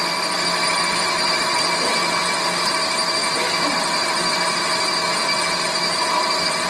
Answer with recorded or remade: recorded